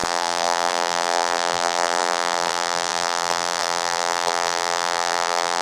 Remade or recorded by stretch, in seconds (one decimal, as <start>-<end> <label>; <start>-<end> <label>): 0.0-5.6 remade